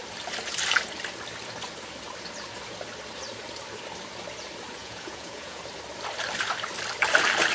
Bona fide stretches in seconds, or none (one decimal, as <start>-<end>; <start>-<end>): 0.0-4.8; 5.6-7.5